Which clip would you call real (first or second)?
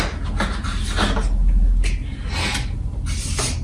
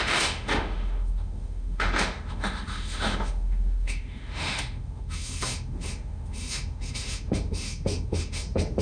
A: first